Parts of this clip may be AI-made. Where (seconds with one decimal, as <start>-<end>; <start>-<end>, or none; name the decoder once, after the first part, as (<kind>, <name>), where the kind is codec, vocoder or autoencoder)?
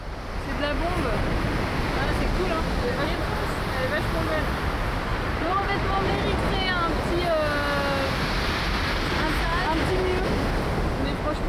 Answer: 5.1-6.1 (vocoder, BigVGAN v2)